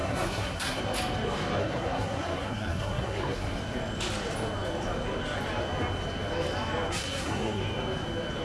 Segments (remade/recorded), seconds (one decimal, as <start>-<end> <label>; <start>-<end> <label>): 0.0-0.8 remade; 0.8-1.6 recorded; 1.6-3.6 remade; 3.6-6.9 recorded; 6.9-7.6 remade; 7.6-8.4 recorded